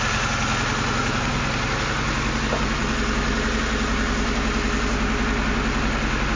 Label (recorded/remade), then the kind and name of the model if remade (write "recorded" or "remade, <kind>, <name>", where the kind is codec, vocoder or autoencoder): recorded